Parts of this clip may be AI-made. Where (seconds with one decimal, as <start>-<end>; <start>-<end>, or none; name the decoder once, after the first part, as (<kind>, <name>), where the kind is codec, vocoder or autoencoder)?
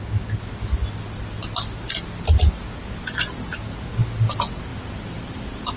none